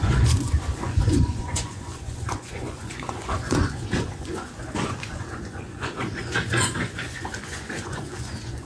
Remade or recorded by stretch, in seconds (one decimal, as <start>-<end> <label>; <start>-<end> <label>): 0.0-8.7 remade